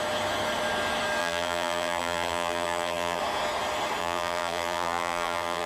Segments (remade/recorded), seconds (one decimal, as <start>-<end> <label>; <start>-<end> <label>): 0.0-1.2 recorded; 1.2-3.2 remade; 3.2-4.0 recorded; 4.0-5.7 remade